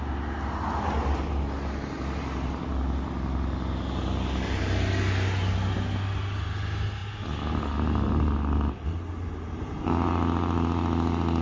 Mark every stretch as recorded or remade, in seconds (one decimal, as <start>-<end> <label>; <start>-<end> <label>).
0.0-11.4 recorded